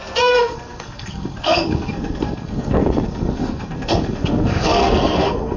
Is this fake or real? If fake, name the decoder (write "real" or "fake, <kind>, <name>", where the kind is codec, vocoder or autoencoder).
fake, codec, SNAC